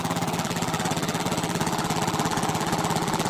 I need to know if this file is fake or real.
fake